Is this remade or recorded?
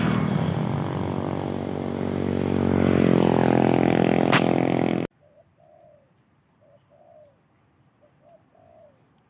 recorded